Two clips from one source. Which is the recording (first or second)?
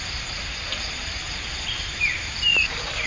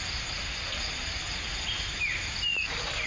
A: second